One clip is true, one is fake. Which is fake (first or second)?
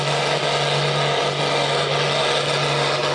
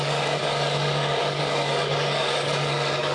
second